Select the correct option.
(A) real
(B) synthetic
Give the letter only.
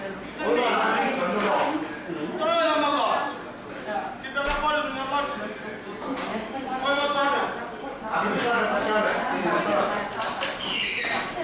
A